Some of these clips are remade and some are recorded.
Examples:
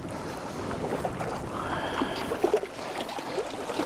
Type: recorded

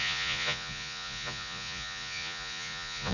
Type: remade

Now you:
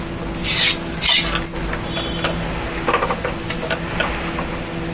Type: recorded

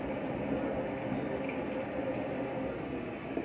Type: recorded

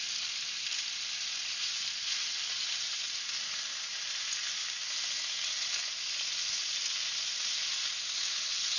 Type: recorded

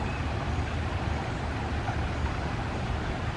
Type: recorded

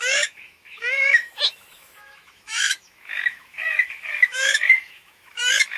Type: remade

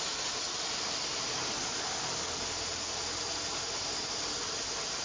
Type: recorded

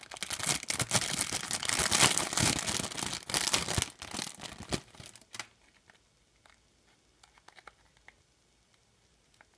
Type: recorded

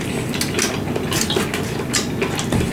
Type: recorded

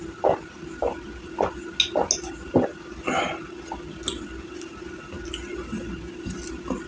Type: recorded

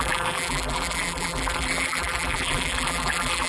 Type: remade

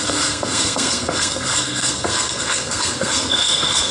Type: remade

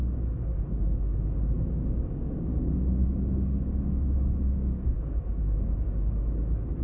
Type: remade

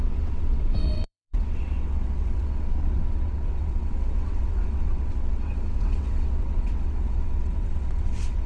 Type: remade